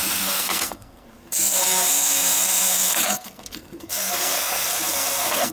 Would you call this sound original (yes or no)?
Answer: no